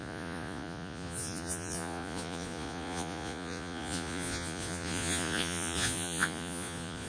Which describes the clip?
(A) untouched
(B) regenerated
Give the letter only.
B